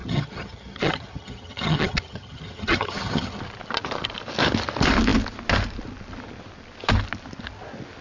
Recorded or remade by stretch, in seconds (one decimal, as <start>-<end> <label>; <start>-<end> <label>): 0.0-3.4 remade; 3.4-8.0 recorded